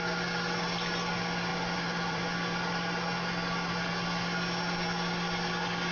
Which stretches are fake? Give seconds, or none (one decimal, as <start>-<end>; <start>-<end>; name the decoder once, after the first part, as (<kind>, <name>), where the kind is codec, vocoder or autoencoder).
1.5-2.2 (vocoder, BigVGAN v2)

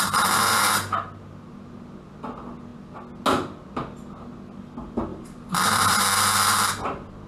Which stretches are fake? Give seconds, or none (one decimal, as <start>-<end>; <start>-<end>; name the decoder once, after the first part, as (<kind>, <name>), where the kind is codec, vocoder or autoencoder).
5.1-6.7 (vocoder, BigVGAN v2)